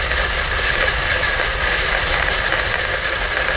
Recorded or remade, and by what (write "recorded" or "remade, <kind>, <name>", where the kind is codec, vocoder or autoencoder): recorded